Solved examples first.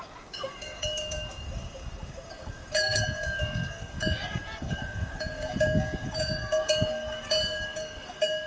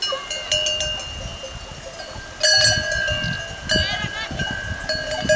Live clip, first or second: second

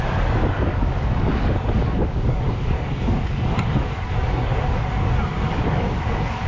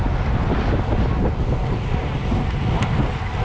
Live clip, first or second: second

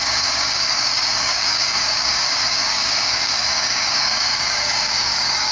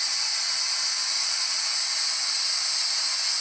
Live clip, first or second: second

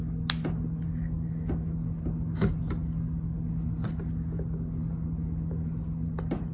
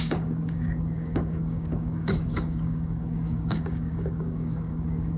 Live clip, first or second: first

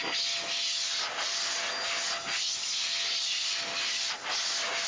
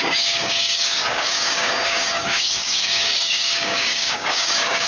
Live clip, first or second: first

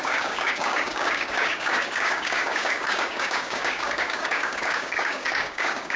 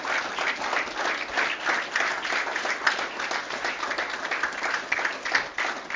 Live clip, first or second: second